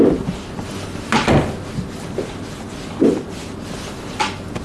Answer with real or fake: real